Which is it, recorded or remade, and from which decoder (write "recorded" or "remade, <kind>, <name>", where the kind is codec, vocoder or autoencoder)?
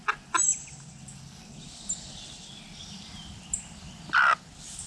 recorded